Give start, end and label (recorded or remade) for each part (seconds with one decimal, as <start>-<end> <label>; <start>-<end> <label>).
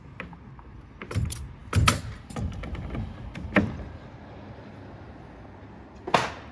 0.0-6.5 recorded